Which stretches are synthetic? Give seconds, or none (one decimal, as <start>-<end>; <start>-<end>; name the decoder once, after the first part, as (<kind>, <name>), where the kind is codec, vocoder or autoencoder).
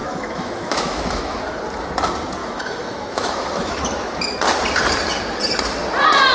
0.0-1.4 (autoencoder, DAC-VAE); 2.4-3.8